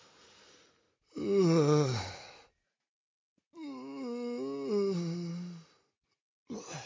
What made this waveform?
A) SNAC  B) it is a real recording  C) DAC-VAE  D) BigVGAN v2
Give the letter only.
B